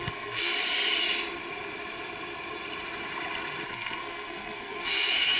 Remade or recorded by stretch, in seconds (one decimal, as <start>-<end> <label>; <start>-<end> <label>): 0.0-0.5 remade; 0.5-3.7 recorded; 3.7-5.4 remade